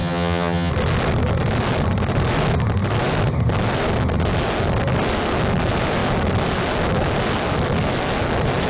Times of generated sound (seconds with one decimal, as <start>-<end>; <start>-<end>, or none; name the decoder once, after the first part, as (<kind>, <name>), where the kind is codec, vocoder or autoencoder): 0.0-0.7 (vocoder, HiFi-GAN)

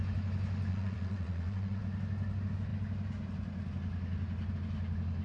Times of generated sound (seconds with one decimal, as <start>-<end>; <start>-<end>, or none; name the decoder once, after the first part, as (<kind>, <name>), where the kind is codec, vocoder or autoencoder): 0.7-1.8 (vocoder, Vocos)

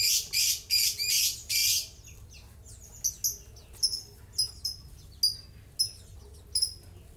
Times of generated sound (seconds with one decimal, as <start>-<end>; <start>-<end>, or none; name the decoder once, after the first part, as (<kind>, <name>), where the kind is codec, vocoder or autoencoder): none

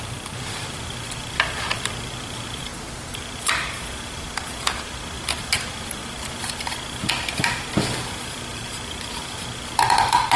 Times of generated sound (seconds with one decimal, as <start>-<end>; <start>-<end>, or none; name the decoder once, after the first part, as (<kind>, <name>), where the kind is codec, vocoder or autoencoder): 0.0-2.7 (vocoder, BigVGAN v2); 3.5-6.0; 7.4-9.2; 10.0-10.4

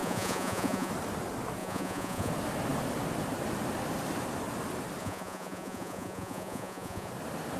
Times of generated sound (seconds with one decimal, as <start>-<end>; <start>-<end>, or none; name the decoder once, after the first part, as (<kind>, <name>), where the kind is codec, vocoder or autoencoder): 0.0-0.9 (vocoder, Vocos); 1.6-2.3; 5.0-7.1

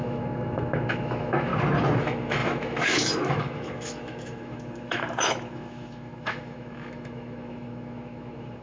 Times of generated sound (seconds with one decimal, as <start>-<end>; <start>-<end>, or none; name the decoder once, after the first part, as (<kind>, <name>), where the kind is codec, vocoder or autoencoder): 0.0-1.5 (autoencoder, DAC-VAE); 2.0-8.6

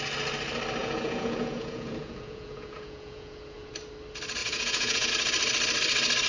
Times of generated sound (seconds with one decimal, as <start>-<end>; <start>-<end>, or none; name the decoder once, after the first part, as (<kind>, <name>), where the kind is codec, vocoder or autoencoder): 0.8-3.7 (vocoder, Vocos); 4.4-5.1

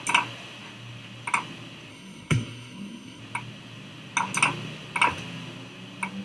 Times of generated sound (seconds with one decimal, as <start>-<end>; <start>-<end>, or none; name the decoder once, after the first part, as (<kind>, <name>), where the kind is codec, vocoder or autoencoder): 1.9-3.2 (codec, SNAC)